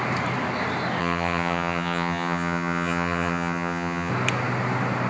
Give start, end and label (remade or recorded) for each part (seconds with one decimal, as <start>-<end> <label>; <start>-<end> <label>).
0.0-1.0 recorded; 1.0-4.1 remade; 4.1-5.1 recorded